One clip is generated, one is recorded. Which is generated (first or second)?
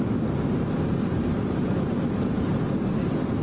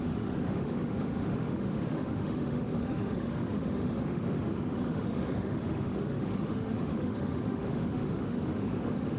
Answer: second